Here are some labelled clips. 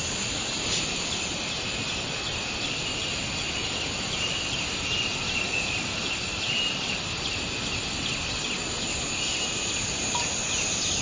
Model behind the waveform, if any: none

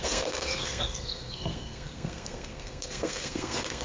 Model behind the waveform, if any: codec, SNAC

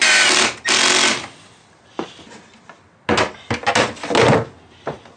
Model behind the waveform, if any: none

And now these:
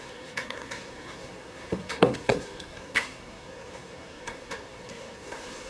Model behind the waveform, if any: codec, SNAC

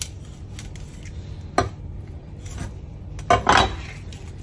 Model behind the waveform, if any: none